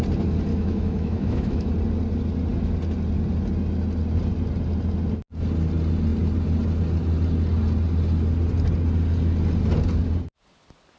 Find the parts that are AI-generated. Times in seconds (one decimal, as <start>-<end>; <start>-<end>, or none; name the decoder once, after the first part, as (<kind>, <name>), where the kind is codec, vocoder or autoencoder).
0.5-1.7 (autoencoder, DAC-VAE)